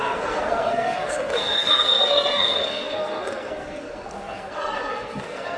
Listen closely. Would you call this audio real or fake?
fake